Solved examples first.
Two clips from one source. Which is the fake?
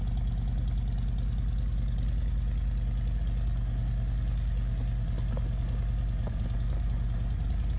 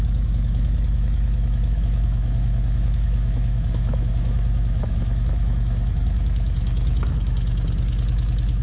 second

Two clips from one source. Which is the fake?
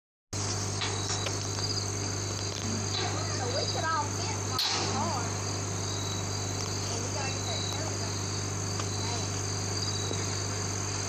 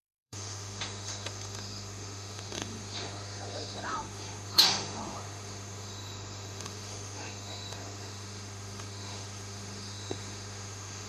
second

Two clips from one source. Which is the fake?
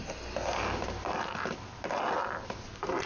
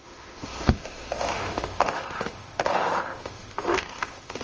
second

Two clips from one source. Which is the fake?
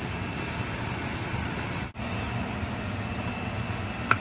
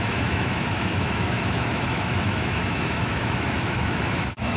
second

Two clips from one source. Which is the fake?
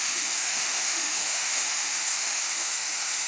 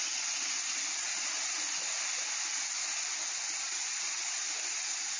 first